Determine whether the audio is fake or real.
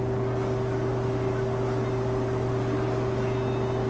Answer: real